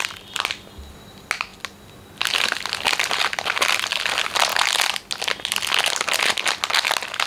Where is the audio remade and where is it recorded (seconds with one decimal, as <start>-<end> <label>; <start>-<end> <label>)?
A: 0.0-7.3 recorded